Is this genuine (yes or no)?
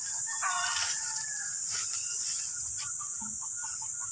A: yes